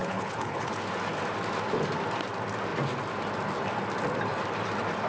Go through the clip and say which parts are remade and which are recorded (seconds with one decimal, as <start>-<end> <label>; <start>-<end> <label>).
0.0-0.7 remade; 0.7-5.1 recorded